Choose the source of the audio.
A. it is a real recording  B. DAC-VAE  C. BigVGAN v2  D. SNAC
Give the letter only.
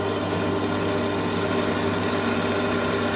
A